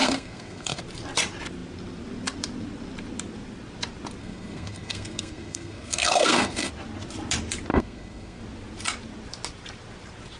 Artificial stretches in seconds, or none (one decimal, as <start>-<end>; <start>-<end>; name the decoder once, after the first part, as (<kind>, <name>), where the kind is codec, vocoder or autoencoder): 0.0-0.8 (codec, SNAC); 4.2-6.7; 7.7-8.4